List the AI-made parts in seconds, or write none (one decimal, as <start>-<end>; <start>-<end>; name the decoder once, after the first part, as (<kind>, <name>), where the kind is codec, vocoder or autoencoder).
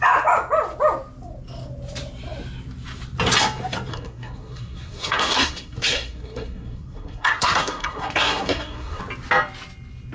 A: 3.9-9.0 (codec, SNAC)